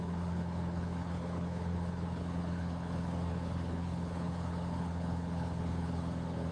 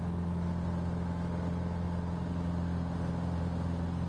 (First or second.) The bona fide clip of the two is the second